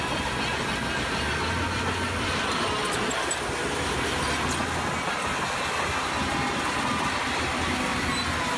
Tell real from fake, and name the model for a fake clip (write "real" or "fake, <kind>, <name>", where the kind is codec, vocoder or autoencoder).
real